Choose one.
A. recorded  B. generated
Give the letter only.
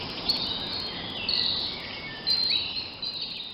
A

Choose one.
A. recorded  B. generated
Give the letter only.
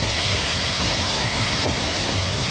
B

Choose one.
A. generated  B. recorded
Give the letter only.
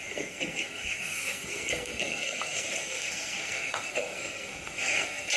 A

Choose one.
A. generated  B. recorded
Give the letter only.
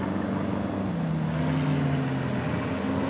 B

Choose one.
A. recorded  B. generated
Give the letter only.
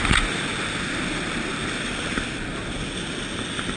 A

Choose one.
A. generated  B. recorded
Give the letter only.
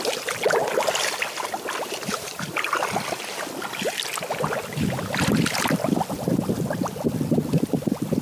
B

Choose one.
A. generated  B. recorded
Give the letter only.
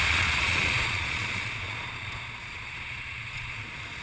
A